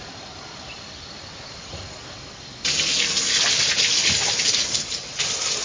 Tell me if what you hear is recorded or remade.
recorded